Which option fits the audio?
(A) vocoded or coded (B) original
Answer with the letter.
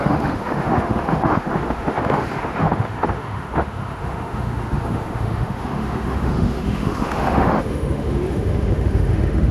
A